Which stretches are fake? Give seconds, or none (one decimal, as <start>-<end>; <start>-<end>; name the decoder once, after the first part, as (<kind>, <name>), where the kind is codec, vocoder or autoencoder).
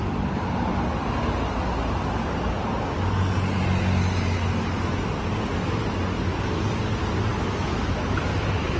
7.3-8.8 (autoencoder, DAC-VAE)